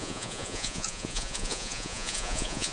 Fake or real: fake